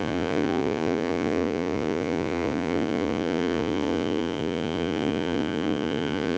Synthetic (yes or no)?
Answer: yes